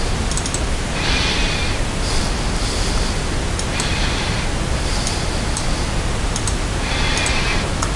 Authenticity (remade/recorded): recorded